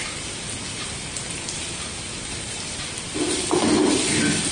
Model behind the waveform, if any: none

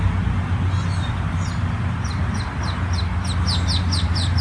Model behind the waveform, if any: none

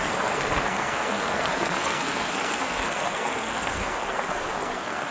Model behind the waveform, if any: codec, SNAC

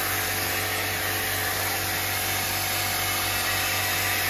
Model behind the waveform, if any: none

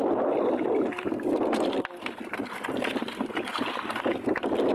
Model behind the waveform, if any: none